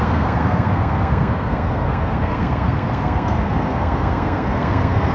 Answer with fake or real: fake